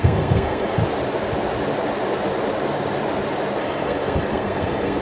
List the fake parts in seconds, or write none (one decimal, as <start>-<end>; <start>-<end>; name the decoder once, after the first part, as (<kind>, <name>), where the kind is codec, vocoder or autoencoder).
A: 0.0-0.8 (codec, SNAC); 3.6-5.0